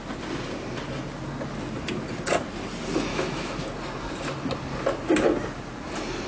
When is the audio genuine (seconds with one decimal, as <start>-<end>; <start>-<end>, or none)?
0.0-3.1; 3.6-6.3